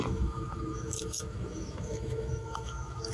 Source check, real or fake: fake